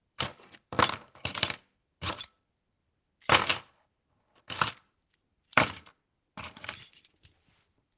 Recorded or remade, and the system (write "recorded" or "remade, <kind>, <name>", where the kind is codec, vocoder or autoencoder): remade, vocoder, BigVGAN v2